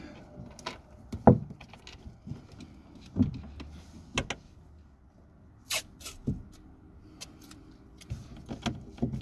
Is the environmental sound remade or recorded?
recorded